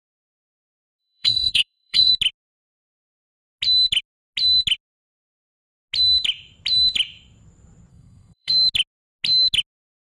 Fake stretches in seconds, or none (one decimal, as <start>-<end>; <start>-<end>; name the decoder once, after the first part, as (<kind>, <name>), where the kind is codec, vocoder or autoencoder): 1.0-2.1 (codec, SNAC); 7.9-8.5

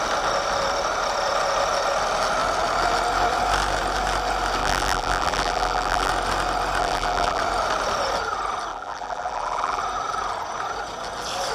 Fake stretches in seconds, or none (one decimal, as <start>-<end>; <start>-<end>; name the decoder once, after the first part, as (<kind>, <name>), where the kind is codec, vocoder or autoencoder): 4.6-6.1 (vocoder, BigVGAN v2); 6.8-7.4; 8.7-9.8

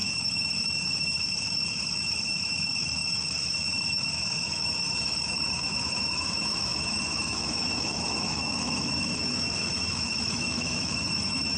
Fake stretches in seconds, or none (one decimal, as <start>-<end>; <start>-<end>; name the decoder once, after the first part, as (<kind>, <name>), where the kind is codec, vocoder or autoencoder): 0.0-11.6 (autoencoder, DAC-VAE)

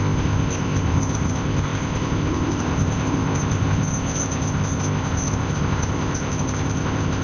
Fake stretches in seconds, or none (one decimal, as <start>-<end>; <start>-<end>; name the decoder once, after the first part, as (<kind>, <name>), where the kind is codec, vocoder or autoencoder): 0.0-7.2 (codec, ZipCodec)